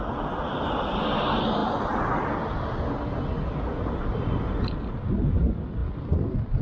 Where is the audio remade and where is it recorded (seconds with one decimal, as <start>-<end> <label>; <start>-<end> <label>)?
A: 0.0-6.6 recorded

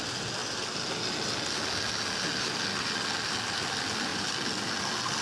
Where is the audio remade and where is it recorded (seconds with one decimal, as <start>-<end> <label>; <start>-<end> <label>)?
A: 0.0-5.2 recorded

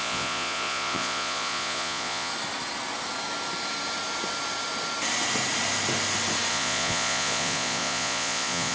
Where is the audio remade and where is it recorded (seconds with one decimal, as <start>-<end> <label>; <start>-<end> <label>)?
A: 0.0-2.3 remade; 2.3-6.5 recorded; 6.5-8.7 remade

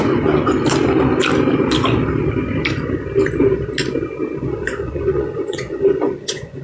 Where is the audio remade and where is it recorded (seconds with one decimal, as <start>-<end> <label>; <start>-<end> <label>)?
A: 0.0-0.5 remade; 0.5-4.5 recorded; 4.5-6.6 remade